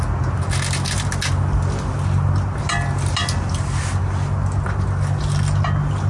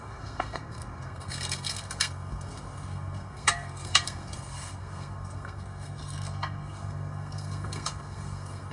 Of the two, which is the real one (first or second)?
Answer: first